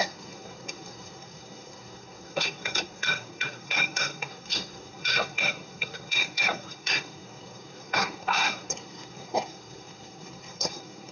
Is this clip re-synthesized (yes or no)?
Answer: yes